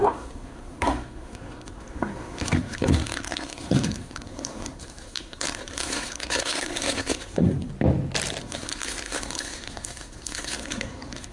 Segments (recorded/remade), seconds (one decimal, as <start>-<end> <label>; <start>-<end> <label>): 0.0-7.7 remade; 7.7-8.4 recorded; 8.4-11.3 remade